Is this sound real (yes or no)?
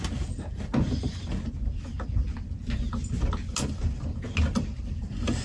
yes